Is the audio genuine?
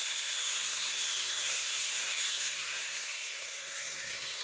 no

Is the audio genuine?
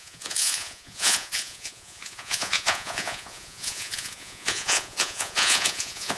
no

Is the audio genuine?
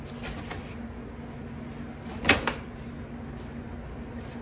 yes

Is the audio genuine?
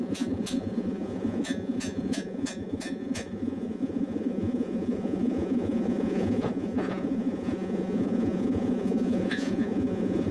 no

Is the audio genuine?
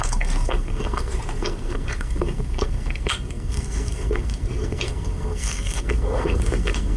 no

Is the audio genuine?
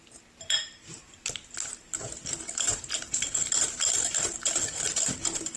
no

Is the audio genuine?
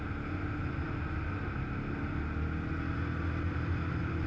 yes